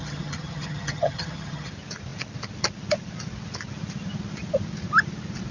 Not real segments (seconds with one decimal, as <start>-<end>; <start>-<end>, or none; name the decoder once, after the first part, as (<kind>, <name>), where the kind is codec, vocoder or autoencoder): 0.0-1.7 (vocoder, HiFi-GAN)